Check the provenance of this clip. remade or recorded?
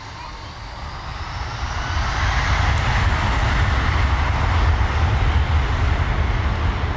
recorded